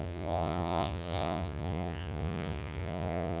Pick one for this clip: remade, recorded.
remade